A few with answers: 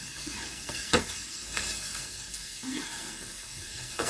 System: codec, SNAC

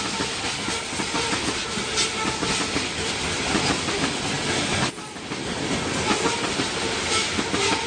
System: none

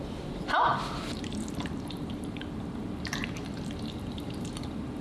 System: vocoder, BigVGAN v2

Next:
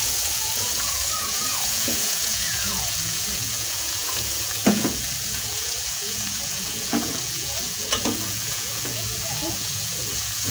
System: vocoder, Vocos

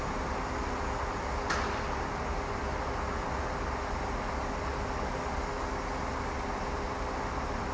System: none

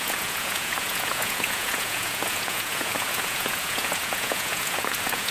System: vocoder, Vocos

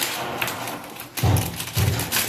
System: none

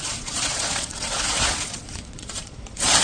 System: vocoder, Vocos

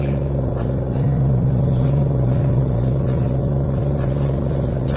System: vocoder, Vocos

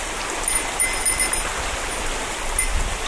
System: none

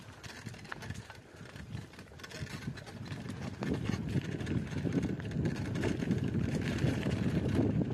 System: none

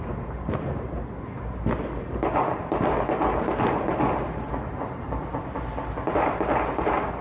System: none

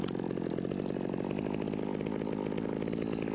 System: none